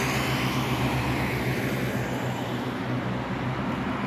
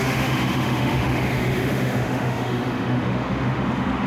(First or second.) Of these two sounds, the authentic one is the first